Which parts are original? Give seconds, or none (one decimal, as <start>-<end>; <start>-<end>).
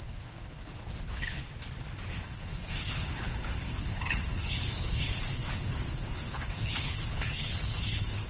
1.4-2.1